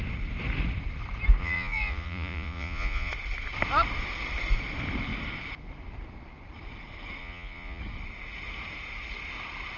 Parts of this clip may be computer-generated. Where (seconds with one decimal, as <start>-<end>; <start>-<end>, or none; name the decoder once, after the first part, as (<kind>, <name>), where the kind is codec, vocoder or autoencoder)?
1.4-3.1 (vocoder, Vocos); 7.2-7.8